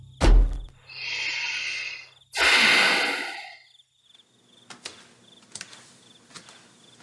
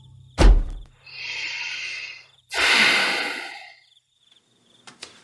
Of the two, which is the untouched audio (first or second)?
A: first